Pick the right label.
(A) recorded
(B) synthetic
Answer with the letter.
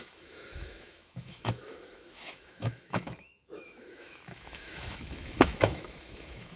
B